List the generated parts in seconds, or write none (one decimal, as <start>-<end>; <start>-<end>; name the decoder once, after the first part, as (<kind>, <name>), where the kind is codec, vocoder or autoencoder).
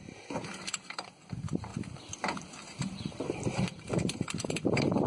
0.0-1.7 (vocoder, BigVGAN v2); 2.4-5.1